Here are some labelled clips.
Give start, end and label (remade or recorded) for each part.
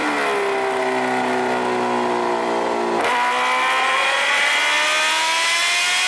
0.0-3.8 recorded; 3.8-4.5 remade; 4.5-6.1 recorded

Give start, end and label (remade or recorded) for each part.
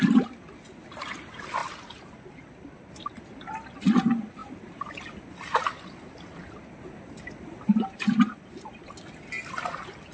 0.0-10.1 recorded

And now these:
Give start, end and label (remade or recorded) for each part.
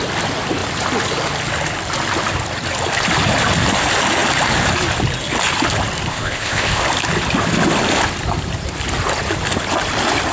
0.0-6.1 recorded; 6.1-6.8 remade; 6.8-10.3 recorded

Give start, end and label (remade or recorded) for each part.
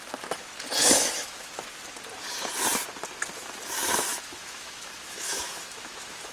0.0-0.8 recorded; 0.8-1.5 remade; 1.5-4.1 recorded; 4.1-6.3 remade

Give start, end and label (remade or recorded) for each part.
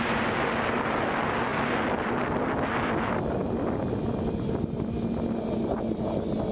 0.0-6.5 recorded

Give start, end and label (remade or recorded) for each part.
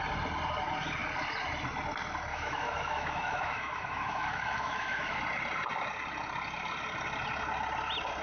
0.0-2.3 recorded; 2.3-5.2 remade; 5.2-8.2 recorded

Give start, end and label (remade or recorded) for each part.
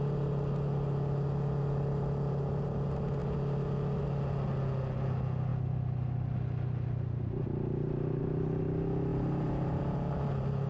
0.0-9.1 recorded; 9.1-9.8 remade; 9.8-10.7 recorded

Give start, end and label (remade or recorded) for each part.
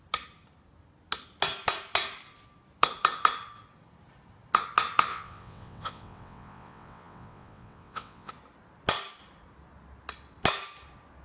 0.0-5.1 recorded; 5.1-8.3 remade; 8.3-11.2 recorded